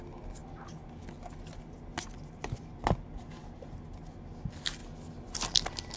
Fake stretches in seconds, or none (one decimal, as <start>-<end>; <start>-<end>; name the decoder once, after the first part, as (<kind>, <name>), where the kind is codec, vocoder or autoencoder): none